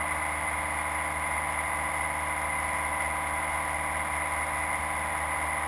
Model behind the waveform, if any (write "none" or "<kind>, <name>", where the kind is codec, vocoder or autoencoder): none